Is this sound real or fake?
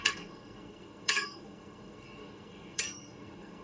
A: fake